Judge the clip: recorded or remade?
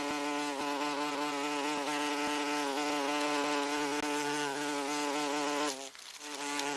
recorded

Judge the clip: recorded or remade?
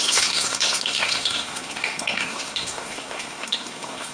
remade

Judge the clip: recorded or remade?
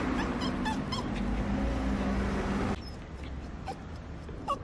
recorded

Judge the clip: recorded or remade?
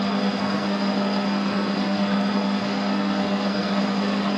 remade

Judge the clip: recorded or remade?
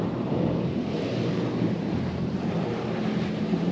remade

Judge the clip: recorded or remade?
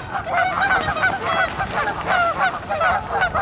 recorded